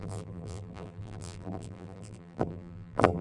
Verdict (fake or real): fake